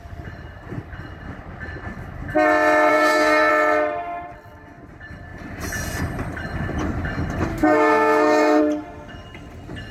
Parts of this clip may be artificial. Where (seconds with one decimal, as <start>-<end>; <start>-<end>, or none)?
2.9-3.5; 7.5-8.6